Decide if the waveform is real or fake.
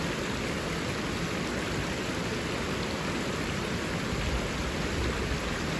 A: real